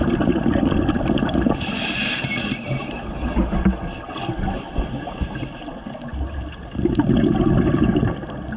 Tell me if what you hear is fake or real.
real